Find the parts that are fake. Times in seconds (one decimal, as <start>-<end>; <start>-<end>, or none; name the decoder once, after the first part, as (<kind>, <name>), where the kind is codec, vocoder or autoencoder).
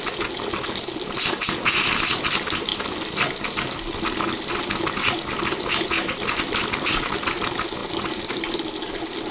none